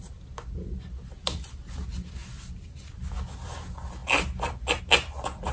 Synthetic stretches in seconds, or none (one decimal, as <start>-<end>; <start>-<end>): none